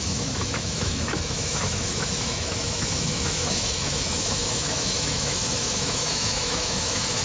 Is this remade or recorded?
remade